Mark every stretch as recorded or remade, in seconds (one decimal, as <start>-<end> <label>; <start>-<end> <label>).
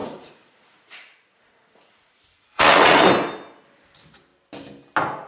0.0-3.1 remade; 3.1-5.3 recorded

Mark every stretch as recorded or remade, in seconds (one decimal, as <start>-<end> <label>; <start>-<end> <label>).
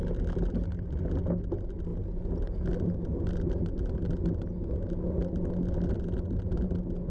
0.0-7.1 recorded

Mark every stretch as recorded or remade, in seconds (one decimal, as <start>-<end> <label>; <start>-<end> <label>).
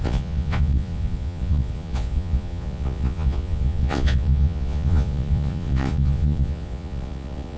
0.0-7.6 remade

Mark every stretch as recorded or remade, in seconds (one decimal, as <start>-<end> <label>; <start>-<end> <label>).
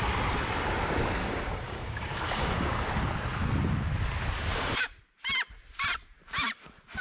0.0-1.2 recorded; 1.2-2.9 remade; 2.9-4.5 recorded; 4.5-5.0 remade; 5.0-7.0 recorded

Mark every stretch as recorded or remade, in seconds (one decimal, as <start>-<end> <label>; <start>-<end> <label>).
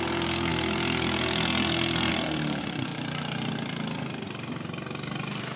0.0-0.5 remade; 0.5-2.1 recorded; 2.1-2.9 remade; 2.9-4.1 recorded; 4.1-5.6 remade